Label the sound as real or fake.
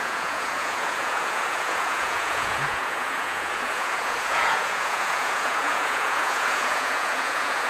fake